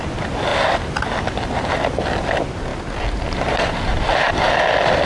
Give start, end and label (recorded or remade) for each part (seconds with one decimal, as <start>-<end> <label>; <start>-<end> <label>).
0.0-5.1 recorded